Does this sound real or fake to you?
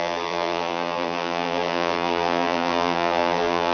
fake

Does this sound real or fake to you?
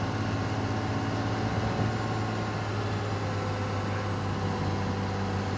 real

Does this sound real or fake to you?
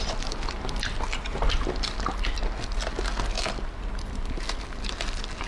real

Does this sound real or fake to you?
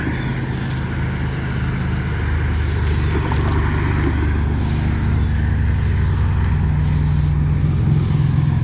real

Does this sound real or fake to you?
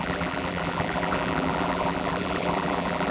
fake